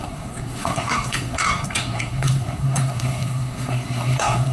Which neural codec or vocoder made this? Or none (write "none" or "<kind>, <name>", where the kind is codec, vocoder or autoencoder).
codec, SNAC